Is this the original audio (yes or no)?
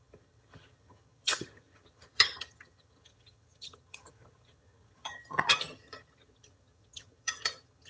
no